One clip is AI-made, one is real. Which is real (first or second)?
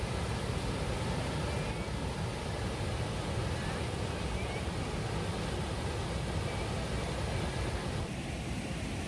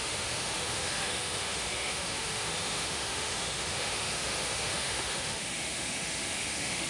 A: first